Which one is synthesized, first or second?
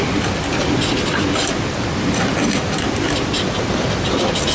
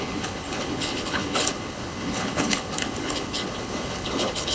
second